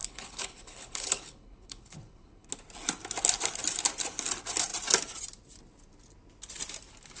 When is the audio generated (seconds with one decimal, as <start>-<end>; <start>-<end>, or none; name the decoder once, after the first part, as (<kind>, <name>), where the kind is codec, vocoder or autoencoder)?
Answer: 0.0-2.5 (codec, HILCodec)

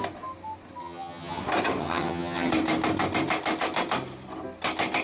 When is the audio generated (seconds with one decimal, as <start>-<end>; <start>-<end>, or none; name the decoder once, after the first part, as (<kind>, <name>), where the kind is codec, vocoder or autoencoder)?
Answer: 0.8-1.4 (vocoder, HiFi-GAN); 1.8-2.5

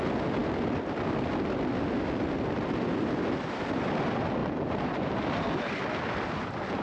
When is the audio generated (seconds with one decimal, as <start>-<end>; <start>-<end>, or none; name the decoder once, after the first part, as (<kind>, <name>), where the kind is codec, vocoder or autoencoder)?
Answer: 4.4-5.7 (vocoder, BigVGAN v2)

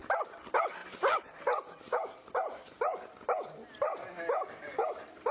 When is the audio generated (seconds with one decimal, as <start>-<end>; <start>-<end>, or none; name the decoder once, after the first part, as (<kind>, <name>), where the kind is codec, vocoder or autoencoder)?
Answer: none

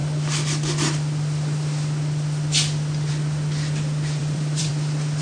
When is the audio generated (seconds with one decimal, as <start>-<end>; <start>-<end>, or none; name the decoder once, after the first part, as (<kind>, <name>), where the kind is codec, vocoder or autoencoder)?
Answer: 4.2-4.7 (vocoder, BigVGAN v2)

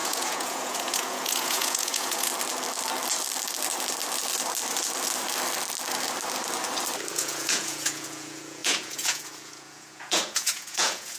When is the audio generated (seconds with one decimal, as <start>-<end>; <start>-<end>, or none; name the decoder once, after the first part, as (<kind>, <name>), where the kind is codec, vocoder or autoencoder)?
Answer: 0.0-2.3 (vocoder, Vocos); 7.1-11.2